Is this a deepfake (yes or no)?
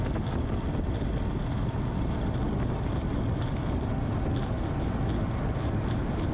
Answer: no